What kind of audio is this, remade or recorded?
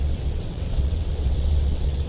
remade